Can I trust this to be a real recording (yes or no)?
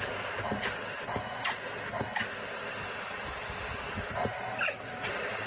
yes